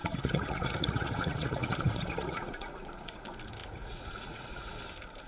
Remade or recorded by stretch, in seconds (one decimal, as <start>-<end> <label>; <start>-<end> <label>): 0.0-3.2 remade; 3.2-3.6 recorded; 3.6-4.8 remade; 4.8-5.3 recorded